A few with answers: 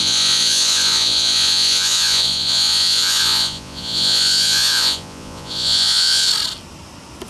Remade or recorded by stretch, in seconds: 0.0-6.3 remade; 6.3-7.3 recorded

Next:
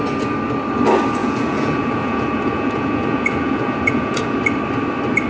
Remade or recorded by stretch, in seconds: 0.0-1.2 recorded; 1.2-4.4 remade; 4.4-5.3 recorded

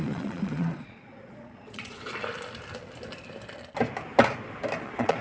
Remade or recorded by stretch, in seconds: 0.0-2.1 remade; 2.1-4.8 recorded; 4.8-5.2 remade